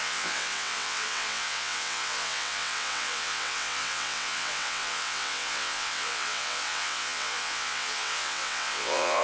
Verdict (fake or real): fake